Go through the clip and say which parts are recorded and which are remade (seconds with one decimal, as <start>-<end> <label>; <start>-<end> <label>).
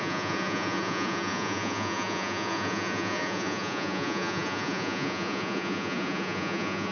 0.0-6.9 remade